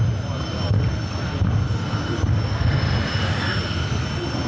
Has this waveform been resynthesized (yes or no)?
no